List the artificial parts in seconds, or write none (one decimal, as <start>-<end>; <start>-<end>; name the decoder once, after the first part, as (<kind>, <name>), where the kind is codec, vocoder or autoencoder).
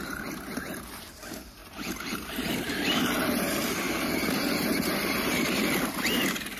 1.6-5.6 (vocoder, BigVGAN v2)